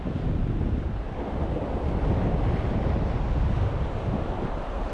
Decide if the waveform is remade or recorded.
recorded